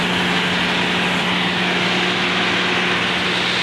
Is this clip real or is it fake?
real